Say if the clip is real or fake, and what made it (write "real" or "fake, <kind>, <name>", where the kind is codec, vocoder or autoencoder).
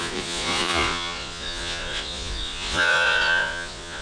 fake, vocoder, Vocos